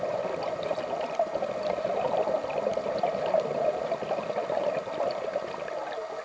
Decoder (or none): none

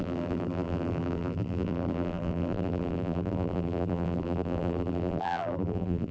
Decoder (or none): vocoder, BigVGAN v2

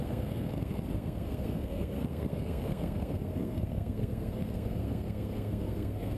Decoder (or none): codec, SNAC